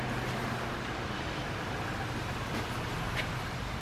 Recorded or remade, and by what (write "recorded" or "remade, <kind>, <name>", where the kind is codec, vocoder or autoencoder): recorded